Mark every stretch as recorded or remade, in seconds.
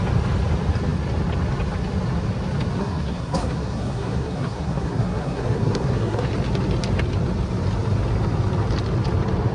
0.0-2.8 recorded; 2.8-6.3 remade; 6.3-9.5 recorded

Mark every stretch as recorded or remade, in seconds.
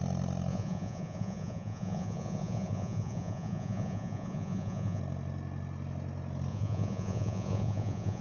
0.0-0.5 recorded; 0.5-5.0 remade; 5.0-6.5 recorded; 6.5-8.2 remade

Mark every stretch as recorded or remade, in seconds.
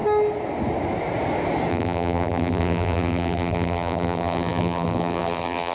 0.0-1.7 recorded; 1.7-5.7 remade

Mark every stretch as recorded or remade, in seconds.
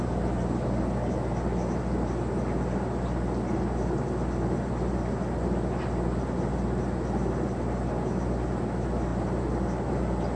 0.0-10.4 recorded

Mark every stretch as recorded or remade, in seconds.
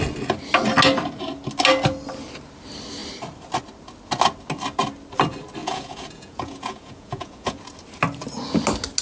0.0-5.6 recorded; 5.6-7.6 remade; 7.6-9.0 recorded